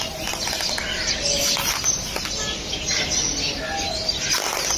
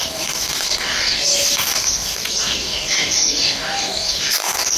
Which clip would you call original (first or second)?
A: first